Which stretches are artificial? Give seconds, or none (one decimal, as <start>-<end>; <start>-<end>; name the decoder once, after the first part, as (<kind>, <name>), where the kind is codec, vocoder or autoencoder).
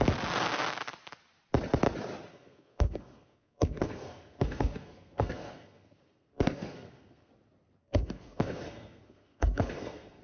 2.3-7.3 (codec, SNAC); 7.8-10.2